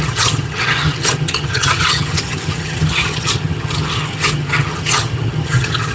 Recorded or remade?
remade